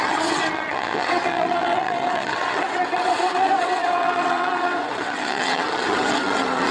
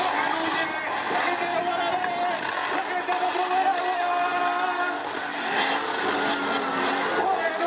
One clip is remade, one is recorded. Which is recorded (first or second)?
second